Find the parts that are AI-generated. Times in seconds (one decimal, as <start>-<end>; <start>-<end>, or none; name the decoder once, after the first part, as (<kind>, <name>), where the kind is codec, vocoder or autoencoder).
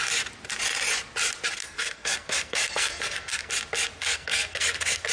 1.6-3.5 (codec, SNAC); 4.0-5.1